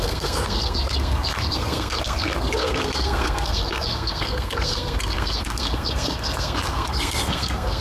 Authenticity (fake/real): fake